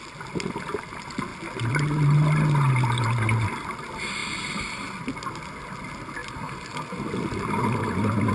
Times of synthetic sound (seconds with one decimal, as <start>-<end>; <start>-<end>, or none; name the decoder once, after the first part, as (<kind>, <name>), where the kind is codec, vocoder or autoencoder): none